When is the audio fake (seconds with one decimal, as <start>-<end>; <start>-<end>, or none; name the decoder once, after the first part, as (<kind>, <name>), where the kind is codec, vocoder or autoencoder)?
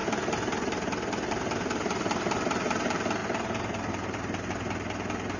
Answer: 1.3-5.4 (vocoder, BigVGAN v2)